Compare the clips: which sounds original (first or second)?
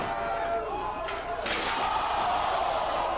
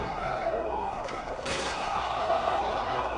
first